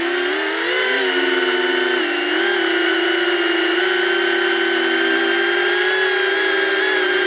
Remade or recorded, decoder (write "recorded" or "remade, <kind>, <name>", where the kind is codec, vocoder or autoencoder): recorded